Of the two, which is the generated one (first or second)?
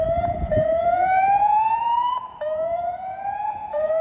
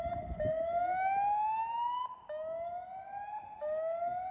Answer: first